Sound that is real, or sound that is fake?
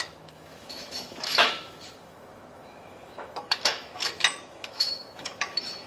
fake